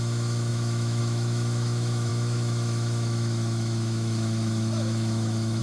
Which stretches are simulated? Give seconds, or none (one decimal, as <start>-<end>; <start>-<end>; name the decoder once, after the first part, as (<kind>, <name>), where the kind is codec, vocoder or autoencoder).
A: 0.0-5.6 (autoencoder, DAC-VAE)